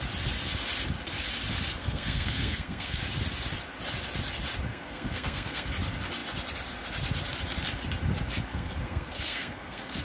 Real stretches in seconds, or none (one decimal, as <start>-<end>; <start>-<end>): 0.0-1.8; 3.0-4.7; 5.7-8.5